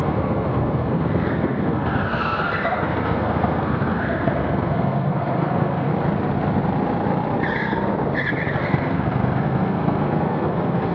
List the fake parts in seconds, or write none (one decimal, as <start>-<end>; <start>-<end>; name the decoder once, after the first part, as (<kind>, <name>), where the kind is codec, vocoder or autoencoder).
0.0-5.9 (codec, SNAC); 8.6-10.9